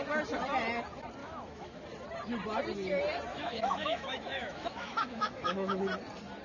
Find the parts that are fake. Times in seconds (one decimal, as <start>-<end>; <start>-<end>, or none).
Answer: 1.2-1.8; 3.3-5.8